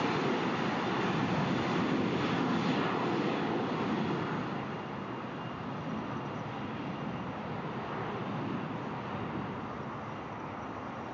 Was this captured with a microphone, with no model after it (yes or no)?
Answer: yes